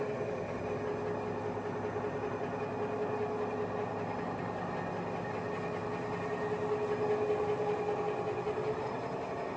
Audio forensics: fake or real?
real